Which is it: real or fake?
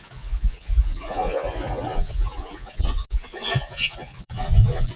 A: fake